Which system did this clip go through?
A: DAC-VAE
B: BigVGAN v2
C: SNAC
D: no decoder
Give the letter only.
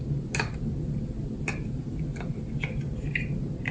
D